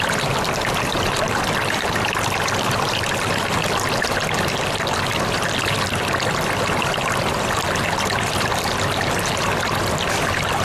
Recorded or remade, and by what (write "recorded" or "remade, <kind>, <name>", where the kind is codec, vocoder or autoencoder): recorded